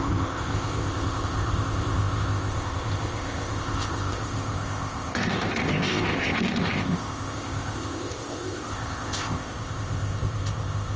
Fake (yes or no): yes